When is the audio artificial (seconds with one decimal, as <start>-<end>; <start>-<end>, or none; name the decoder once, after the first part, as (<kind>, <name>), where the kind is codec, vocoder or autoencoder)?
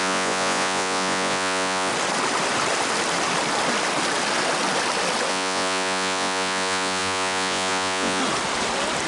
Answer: 0.0-1.9 (vocoder, Vocos); 5.3-8.2